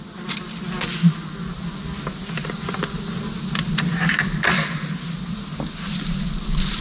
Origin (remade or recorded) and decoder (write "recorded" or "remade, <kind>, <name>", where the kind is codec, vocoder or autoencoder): recorded